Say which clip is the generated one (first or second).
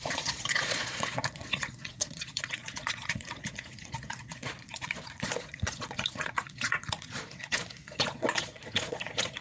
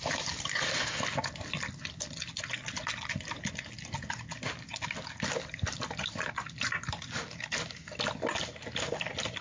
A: first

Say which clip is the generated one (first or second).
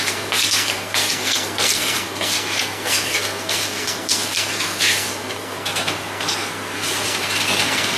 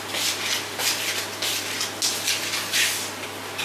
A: first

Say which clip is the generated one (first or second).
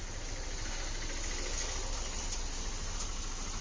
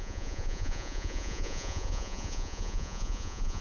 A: second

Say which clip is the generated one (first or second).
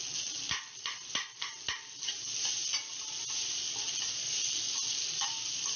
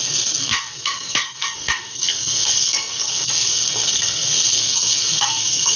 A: second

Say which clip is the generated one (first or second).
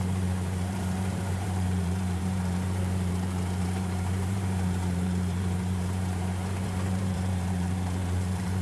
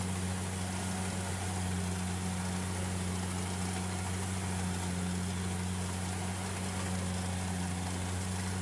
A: first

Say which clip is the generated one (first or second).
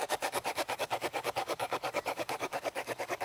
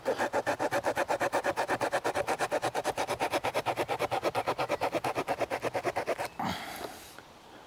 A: first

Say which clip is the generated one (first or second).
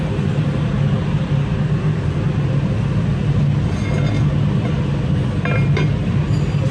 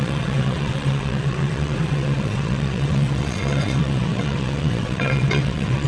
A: second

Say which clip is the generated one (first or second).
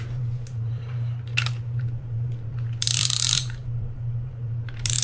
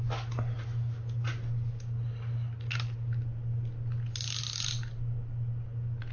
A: first